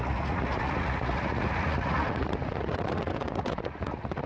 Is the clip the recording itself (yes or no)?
no